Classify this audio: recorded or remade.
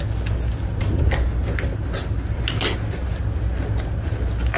recorded